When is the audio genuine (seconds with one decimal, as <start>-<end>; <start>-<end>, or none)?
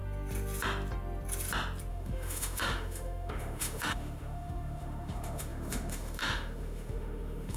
0.0-1.9